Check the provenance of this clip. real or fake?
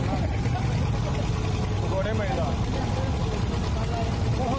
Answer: real